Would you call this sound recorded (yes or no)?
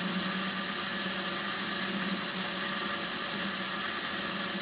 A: yes